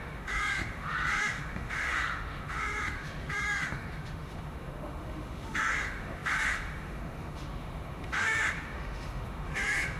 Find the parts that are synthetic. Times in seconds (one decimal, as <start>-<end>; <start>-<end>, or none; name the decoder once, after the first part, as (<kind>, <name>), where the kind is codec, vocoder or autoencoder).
0.0-10.0 (autoencoder, DAC-VAE)